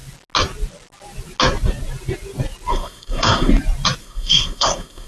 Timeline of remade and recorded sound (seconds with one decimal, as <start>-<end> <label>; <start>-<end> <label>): 0.0-2.7 recorded; 2.7-3.5 remade; 3.5-4.0 recorded; 4.0-5.1 remade